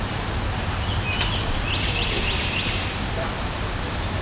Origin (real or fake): real